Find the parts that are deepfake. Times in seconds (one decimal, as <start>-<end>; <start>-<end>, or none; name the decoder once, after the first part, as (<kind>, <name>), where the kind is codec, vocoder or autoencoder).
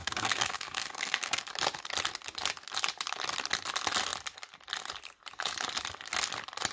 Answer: 0.0-1.5 (codec, SNAC)